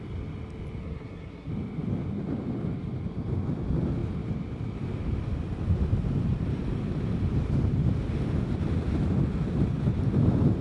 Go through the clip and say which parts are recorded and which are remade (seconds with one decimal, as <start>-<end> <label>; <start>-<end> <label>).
0.0-0.8 recorded; 0.8-1.5 remade; 1.5-10.6 recorded